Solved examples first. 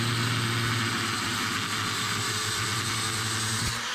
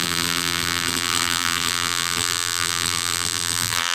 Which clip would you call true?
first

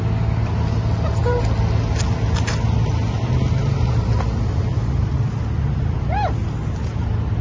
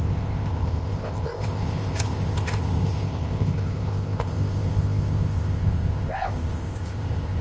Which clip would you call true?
first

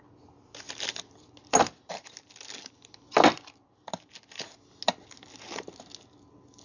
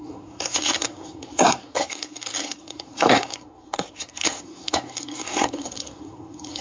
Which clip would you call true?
first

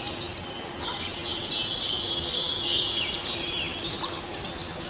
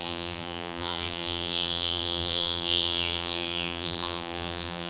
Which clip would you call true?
first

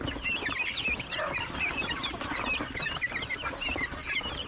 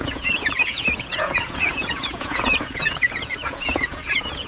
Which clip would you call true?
first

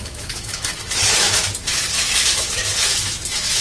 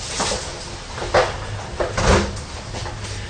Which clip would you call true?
second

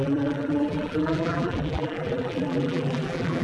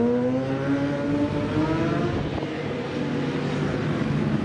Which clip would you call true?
second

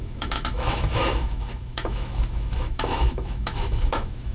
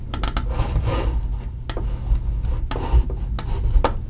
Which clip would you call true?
second